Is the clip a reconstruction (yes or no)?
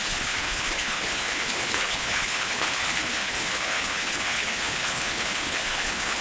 yes